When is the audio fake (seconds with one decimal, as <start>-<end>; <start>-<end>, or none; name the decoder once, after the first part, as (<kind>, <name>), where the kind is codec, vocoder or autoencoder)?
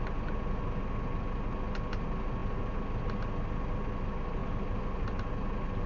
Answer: none